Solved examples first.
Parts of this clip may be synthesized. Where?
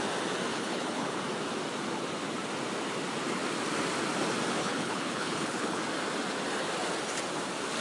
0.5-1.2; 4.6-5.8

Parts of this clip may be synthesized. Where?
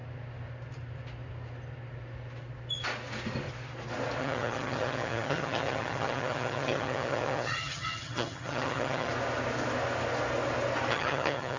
4.2-9.1; 10.9-11.6